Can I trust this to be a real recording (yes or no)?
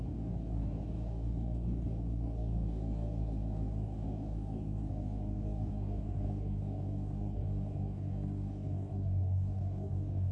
no